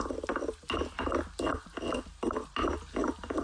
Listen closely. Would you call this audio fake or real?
real